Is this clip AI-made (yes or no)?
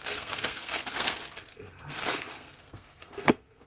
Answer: yes